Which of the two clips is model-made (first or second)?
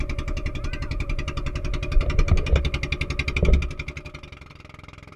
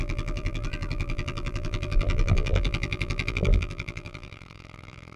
second